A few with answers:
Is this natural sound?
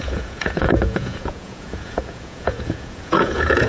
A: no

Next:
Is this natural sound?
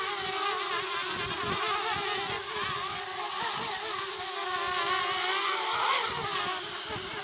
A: yes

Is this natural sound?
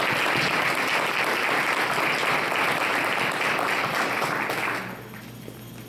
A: yes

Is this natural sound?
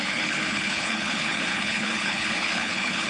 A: no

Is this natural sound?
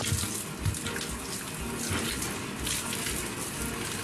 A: yes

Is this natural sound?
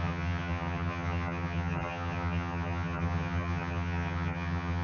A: no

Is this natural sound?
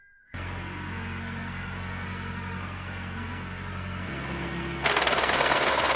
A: no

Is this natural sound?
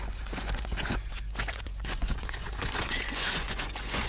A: no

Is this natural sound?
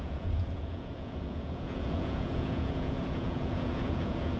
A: no